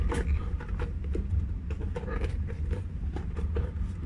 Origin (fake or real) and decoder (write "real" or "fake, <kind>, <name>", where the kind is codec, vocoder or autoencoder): real